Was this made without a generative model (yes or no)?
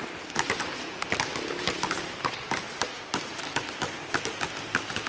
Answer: no